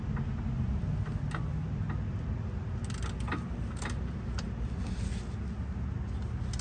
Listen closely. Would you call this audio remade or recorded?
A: recorded